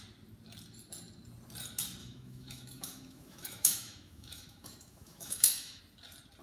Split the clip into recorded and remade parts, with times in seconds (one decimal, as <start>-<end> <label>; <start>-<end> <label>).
0.0-2.0 recorded; 2.0-5.8 remade; 5.8-6.4 recorded